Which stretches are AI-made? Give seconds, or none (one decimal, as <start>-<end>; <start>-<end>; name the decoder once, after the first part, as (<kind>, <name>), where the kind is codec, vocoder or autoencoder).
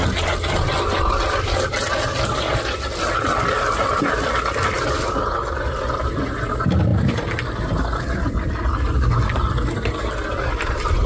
none